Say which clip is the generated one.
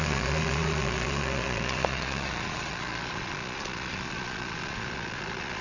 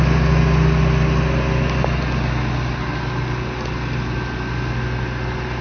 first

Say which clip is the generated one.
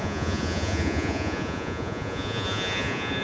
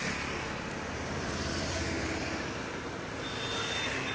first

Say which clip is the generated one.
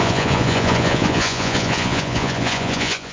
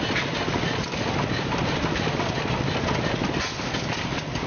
first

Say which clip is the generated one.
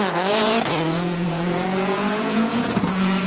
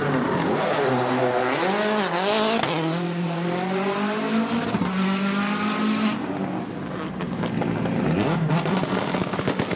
first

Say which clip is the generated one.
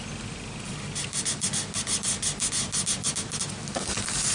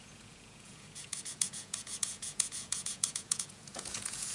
second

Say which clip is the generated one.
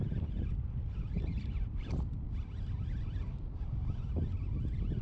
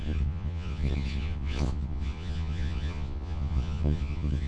second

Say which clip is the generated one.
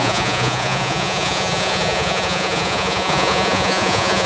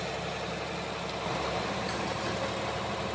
first